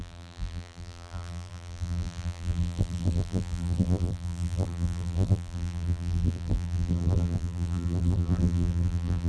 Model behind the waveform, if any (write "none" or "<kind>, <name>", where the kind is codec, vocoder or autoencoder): vocoder, BigVGAN v2